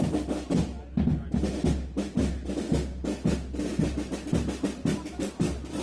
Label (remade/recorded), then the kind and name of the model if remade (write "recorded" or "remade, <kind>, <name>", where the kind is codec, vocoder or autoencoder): recorded